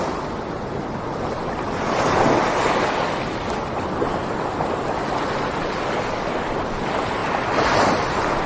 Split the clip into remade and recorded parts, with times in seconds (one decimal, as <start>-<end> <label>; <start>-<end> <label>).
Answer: 0.0-8.5 recorded